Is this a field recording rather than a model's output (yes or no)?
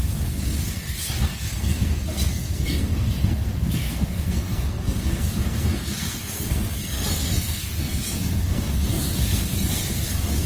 no